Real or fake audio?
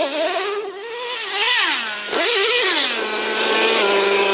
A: real